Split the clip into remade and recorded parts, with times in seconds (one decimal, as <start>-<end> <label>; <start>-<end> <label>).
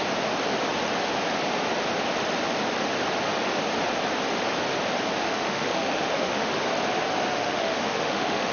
0.0-5.2 recorded; 5.2-6.5 remade; 6.5-7.3 recorded; 7.3-8.5 remade